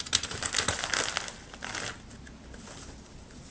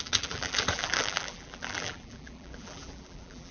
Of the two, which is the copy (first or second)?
second